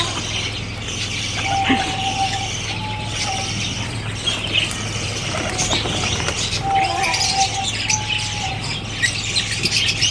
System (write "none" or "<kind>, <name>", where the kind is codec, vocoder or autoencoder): none